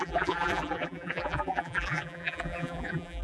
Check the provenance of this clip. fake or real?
fake